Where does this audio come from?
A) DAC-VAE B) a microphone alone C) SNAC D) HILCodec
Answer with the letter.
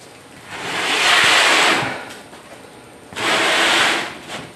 B